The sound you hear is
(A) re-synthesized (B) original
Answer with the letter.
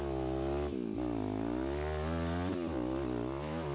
B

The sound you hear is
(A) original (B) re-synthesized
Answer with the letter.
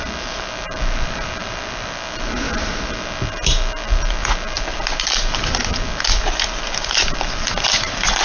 B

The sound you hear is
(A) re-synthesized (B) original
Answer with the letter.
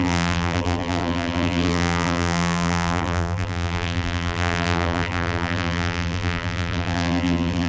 A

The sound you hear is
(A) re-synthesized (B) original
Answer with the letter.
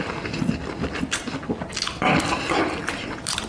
B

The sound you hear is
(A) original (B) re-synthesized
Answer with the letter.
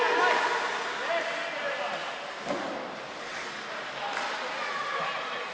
A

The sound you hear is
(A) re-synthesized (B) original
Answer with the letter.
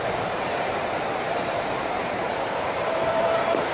A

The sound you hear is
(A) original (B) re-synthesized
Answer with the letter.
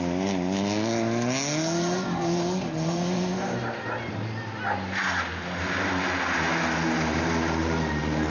A